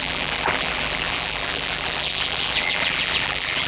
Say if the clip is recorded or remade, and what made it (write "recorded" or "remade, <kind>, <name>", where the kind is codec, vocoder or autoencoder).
remade, vocoder, BigVGAN v2